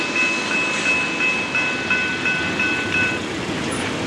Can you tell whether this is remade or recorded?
recorded